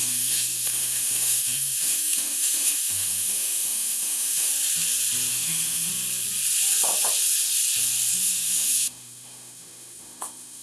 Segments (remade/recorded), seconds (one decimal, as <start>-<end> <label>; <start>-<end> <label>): 0.0-4.5 remade; 4.5-5.3 recorded; 5.3-5.9 remade; 5.9-8.2 recorded; 8.2-10.6 remade